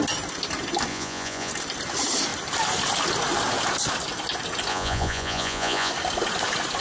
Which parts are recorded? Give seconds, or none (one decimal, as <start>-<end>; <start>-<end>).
0.0-0.9; 1.5-4.7; 5.9-6.8